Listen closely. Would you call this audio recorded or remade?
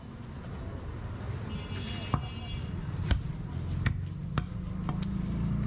recorded